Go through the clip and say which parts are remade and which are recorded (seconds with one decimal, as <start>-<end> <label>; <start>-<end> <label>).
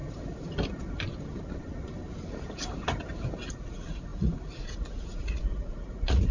0.0-3.5 recorded; 3.5-6.3 remade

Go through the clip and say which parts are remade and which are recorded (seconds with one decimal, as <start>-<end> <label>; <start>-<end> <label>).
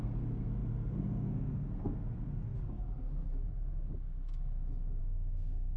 0.0-2.4 remade; 2.4-5.0 recorded; 5.0-5.8 remade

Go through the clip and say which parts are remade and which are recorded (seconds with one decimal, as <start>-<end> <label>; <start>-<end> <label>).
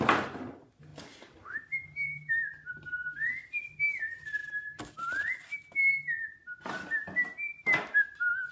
0.0-8.5 recorded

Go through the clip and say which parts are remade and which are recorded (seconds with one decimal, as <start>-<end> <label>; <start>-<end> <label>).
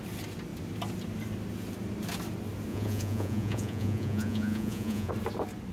0.0-2.7 recorded; 2.7-5.1 remade; 5.1-5.7 recorded